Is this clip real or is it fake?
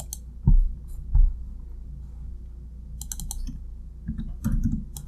real